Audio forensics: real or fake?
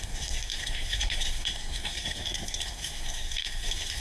fake